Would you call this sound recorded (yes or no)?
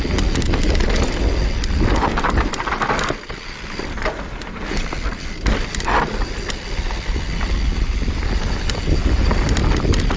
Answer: yes